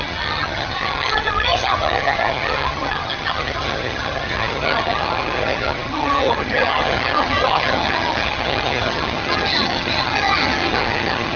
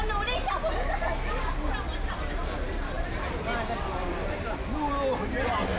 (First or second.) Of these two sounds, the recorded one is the second